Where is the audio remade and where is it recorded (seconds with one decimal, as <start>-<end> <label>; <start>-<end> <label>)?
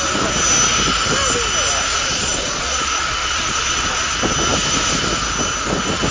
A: 0.0-1.9 recorded; 1.9-4.0 remade; 4.0-6.1 recorded